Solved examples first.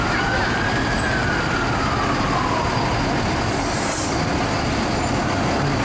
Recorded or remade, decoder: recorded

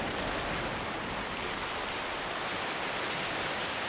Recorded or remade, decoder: recorded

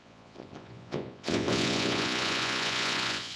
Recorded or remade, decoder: remade, vocoder, Vocos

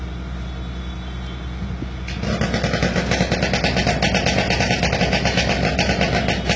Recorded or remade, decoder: recorded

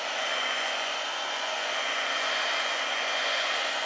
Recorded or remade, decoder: remade, vocoder, Vocos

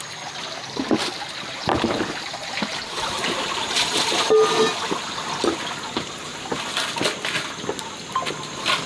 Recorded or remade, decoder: recorded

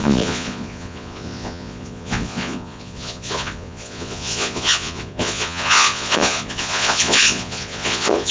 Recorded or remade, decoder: remade, vocoder, Vocos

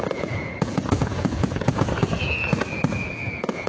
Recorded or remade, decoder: remade, vocoder, Vocos